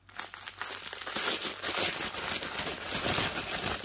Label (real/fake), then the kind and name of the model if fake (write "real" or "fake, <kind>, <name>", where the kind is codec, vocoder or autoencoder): real